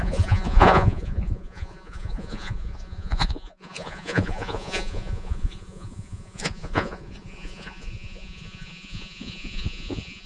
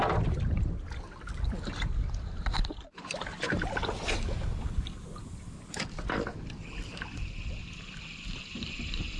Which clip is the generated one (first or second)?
first